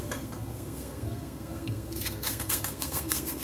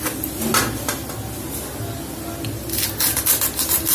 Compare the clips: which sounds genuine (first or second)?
second